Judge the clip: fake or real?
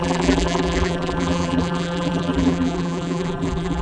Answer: fake